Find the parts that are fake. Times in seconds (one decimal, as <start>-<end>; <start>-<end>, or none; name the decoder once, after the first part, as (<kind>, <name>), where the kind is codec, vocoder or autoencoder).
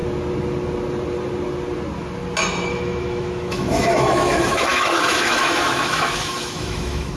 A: 2.7-7.2 (autoencoder, DAC-VAE)